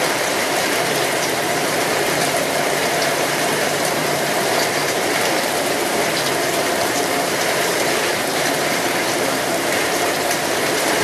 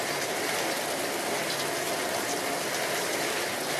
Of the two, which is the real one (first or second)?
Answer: second